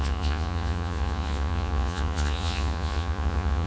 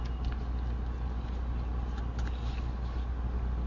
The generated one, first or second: first